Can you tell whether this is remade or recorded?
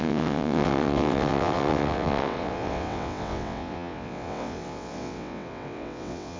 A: remade